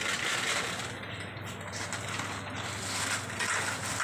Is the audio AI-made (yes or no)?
no